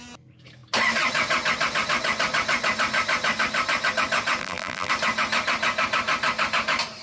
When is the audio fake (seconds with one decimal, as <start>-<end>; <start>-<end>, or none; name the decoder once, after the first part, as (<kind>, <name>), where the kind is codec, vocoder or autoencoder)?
4.4-4.9 (vocoder, BigVGAN v2)